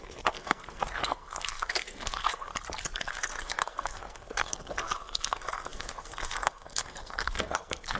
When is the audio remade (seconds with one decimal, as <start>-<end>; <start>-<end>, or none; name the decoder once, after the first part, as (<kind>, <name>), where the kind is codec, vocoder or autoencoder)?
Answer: 0.0-2.5 (codec, SNAC); 3.1-8.0